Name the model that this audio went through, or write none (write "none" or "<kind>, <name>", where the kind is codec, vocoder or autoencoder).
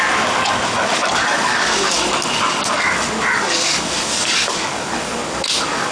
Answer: codec, DAC